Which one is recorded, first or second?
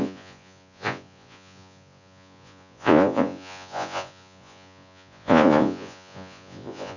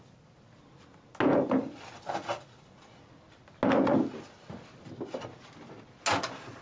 second